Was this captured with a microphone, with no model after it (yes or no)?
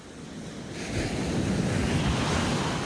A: yes